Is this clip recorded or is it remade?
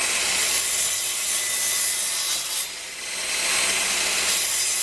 recorded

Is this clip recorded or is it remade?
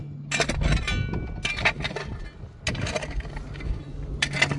recorded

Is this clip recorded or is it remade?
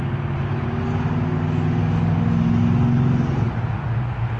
recorded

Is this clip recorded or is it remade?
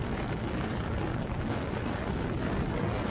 recorded